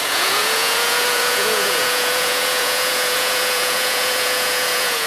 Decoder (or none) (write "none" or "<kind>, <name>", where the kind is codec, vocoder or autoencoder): vocoder, Vocos